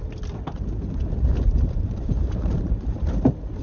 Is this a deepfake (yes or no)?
no